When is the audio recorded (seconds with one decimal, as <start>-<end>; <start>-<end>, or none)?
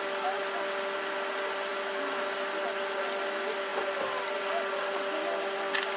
0.0-6.0